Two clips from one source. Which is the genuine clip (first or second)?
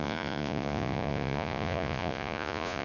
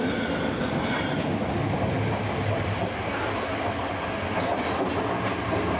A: second